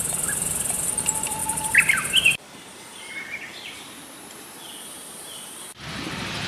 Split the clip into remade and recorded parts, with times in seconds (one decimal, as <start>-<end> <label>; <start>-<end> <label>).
0.0-6.5 remade